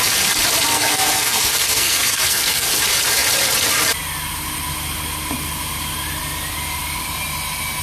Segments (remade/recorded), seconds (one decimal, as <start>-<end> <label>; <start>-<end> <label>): 0.0-0.7 recorded; 0.7-2.7 remade; 2.7-7.8 recorded